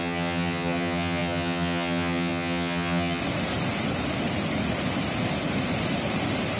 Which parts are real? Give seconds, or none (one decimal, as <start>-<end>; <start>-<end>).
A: 3.2-6.6